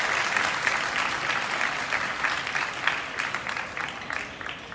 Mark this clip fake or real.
real